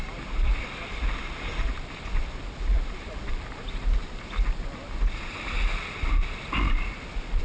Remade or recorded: recorded